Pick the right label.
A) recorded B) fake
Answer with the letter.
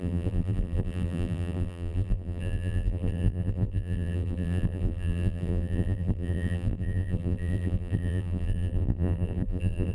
B